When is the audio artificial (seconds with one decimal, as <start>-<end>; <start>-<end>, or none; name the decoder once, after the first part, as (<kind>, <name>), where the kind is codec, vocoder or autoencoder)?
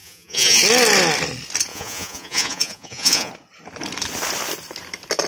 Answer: 0.0-0.6 (vocoder, Vocos); 1.7-3.3